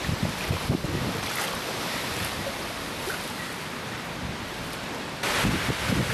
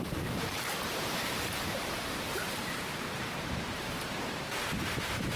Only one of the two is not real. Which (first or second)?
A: second